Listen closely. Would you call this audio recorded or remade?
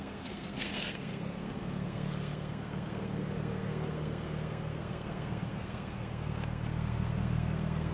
remade